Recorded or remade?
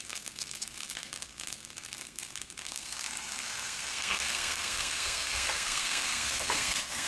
remade